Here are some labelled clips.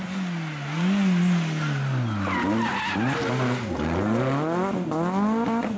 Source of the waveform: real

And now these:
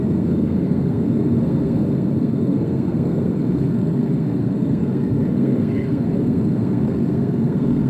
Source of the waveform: fake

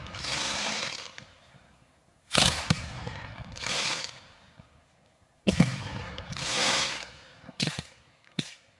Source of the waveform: fake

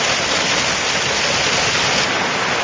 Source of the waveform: real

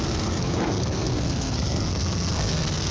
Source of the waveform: fake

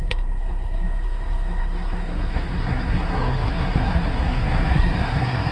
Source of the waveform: fake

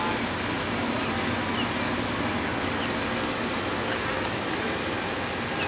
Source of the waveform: real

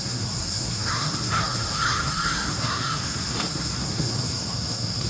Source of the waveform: fake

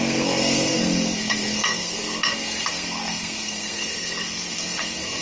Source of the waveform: fake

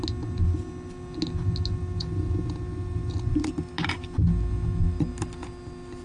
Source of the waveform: real